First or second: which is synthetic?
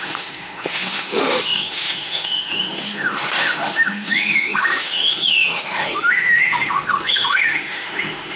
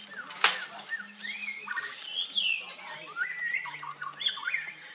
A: first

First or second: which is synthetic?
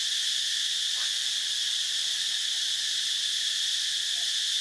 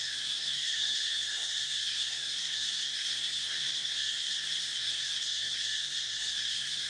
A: second